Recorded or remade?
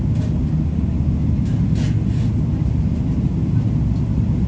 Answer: recorded